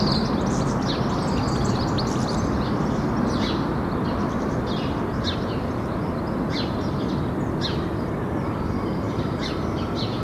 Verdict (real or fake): real